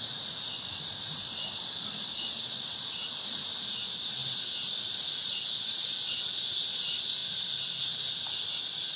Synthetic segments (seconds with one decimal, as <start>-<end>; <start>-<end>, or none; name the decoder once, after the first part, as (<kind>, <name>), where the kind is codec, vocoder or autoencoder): none